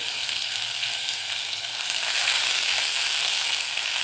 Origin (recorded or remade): remade